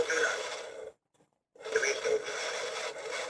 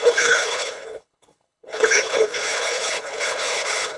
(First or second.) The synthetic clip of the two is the second